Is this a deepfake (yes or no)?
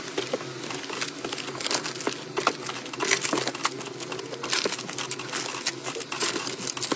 no